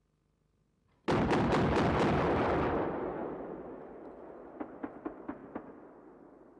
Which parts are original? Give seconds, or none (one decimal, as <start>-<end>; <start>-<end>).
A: 0.0-6.6